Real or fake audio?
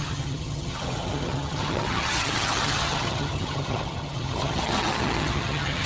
fake